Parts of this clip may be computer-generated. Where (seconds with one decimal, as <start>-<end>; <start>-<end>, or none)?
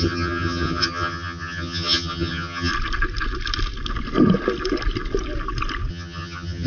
0.0-2.7; 5.9-6.7